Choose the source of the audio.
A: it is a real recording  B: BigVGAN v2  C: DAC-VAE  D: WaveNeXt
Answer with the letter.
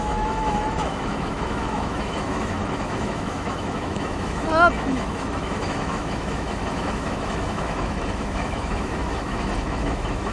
C